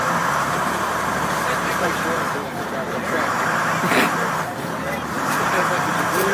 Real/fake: fake